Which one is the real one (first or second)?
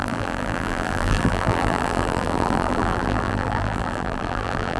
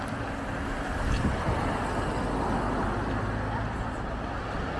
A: second